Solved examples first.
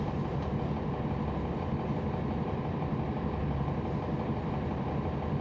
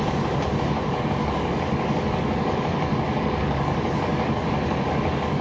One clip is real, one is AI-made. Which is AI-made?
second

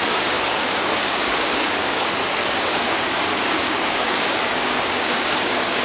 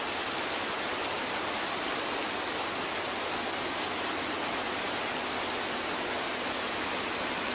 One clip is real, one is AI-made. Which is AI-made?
first